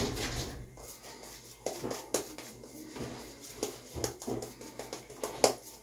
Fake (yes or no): no